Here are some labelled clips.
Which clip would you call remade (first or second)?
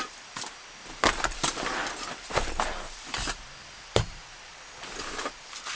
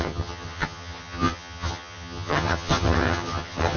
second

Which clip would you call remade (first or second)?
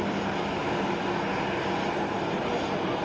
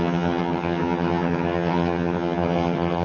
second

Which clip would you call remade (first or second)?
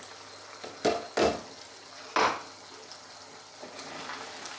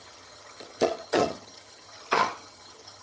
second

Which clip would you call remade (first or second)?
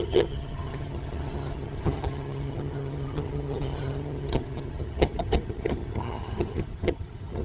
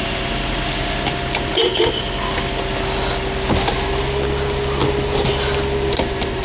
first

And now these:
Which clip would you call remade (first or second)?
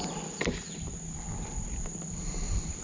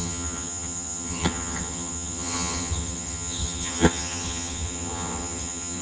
second